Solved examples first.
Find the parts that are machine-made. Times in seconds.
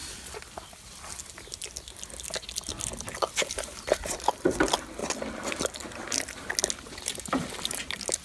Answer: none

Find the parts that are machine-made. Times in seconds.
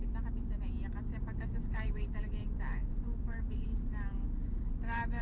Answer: 0.0-0.7 (vocoder, BigVGAN v2); 1.1-2.2; 2.8-3.8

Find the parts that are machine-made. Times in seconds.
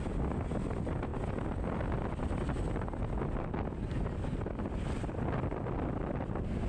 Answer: none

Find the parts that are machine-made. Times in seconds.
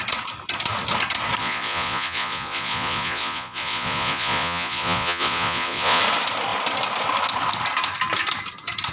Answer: 1.4-6.0 (vocoder, Vocos)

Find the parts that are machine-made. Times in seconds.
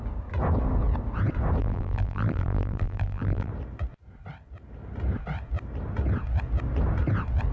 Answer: 1.6-3.5 (vocoder, BigVGAN v2)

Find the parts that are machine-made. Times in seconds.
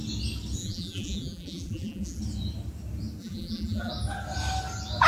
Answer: 0.6-2.2 (vocoder, BigVGAN v2); 3.2-3.9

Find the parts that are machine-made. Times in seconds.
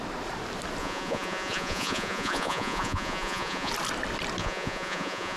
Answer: 0.8-3.7 (vocoder, Vocos); 4.4-5.4